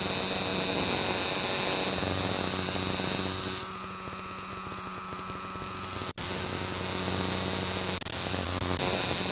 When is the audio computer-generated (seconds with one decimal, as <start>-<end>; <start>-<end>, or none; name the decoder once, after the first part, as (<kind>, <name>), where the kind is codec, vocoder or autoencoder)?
none